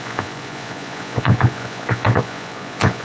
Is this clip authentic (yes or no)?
no